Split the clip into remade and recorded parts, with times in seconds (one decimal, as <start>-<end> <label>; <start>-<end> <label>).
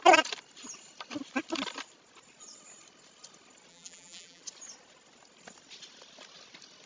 0.0-3.7 recorded; 3.7-4.4 remade; 4.4-6.9 recorded